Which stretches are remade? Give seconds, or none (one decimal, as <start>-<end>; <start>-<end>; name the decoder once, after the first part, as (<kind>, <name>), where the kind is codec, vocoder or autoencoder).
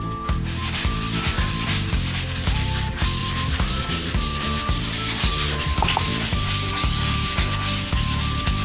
3.2-6.7 (vocoder, BigVGAN v2)